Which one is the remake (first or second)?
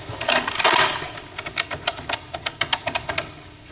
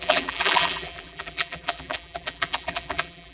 second